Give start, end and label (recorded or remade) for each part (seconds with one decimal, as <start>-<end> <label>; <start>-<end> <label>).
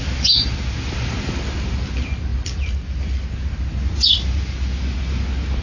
0.0-2.3 recorded; 2.3-3.3 remade; 3.3-5.6 recorded